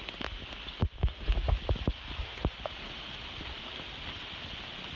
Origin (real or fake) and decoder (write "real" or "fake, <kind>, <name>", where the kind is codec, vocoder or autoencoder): real